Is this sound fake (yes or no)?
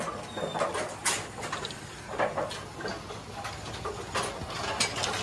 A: no